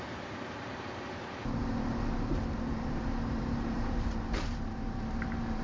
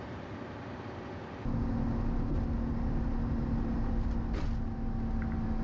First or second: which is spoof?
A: first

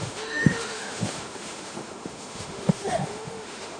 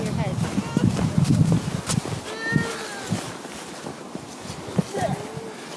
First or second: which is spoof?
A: first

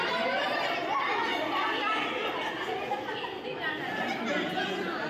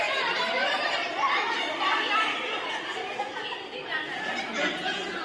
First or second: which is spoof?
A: second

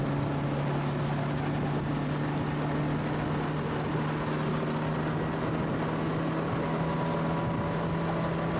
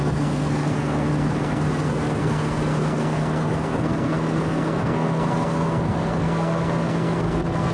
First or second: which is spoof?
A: second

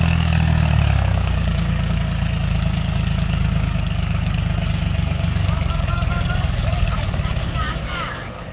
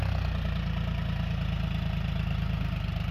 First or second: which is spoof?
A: first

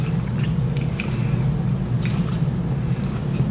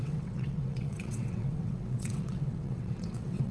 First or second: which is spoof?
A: second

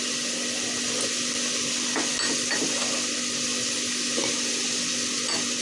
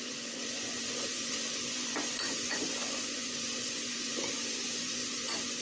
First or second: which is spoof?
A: second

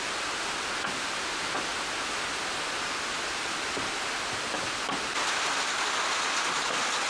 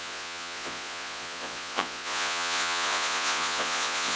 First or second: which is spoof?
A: second